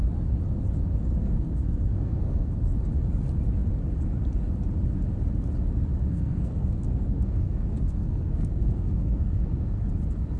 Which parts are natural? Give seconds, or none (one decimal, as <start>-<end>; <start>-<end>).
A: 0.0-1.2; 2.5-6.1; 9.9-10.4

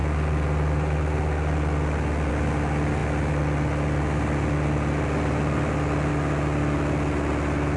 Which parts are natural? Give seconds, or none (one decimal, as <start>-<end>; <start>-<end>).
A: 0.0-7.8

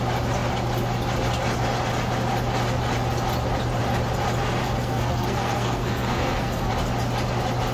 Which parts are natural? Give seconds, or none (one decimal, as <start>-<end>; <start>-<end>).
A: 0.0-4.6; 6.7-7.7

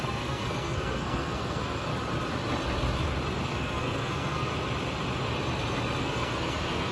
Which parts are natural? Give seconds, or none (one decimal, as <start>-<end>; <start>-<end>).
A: 1.9-3.4; 4.5-6.0